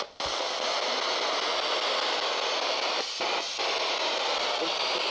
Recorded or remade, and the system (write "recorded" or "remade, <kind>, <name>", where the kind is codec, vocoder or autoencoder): recorded